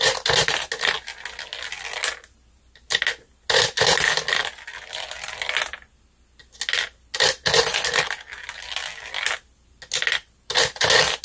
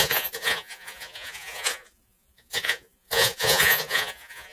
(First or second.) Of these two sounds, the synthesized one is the second